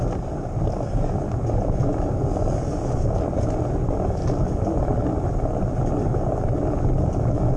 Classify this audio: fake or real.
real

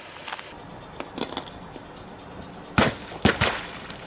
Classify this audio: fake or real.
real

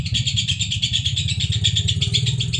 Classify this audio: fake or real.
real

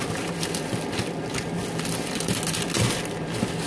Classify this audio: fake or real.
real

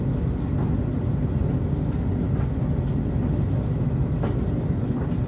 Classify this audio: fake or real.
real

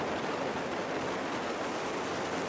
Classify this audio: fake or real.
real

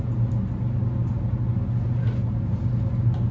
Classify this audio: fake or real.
real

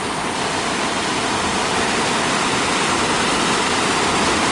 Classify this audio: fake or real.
real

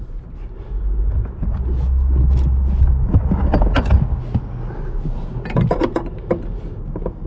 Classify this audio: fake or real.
real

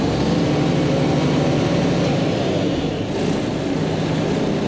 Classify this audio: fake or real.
real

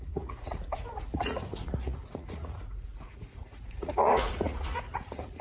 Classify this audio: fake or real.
fake